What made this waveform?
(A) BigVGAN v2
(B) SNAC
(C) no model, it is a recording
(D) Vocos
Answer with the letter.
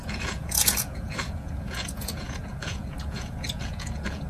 D